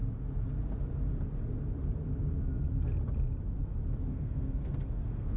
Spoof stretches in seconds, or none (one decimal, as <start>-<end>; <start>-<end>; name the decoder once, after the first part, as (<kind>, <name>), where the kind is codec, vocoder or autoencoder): 4.1-5.4 (codec, SNAC)

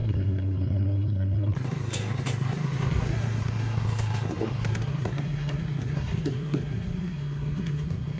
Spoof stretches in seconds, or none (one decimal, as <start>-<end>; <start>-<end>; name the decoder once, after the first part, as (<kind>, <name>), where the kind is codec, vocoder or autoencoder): 0.0-8.2 (codec, SNAC)

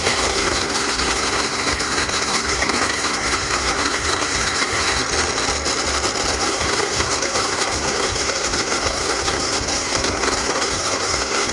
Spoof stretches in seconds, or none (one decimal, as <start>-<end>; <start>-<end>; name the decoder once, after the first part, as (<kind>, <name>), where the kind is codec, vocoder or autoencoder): 0.0-5.0 (codec, SNAC); 6.3-11.5

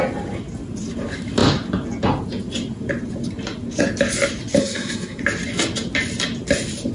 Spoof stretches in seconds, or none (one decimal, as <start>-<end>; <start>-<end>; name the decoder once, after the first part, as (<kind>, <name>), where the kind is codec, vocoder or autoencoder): 4.6-5.2 (codec, SNAC)

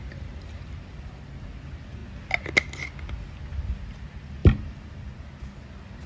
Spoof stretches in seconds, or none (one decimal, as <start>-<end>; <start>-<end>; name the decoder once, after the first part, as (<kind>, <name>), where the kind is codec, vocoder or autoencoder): none

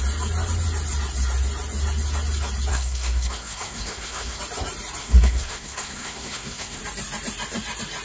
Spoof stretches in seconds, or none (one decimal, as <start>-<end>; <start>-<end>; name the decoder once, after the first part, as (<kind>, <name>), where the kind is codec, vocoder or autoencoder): 2.7-4.4 (codec, SNAC); 5.0-6.8

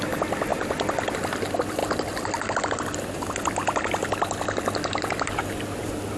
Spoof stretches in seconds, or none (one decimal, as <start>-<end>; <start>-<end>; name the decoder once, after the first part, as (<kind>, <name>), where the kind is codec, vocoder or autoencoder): none